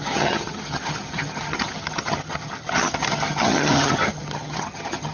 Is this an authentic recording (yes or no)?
no